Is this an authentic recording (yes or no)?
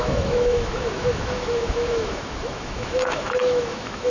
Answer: no